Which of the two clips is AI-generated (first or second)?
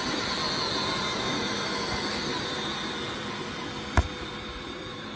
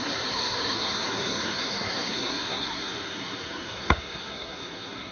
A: second